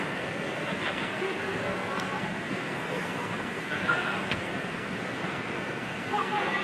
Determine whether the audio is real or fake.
fake